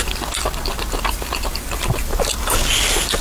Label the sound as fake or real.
real